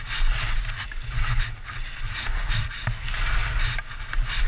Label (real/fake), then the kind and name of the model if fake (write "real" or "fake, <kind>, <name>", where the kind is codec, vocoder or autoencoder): real